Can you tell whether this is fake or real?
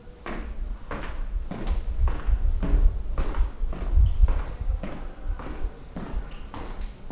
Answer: real